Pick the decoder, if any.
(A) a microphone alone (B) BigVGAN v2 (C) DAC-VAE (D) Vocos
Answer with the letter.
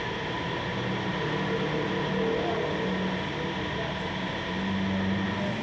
A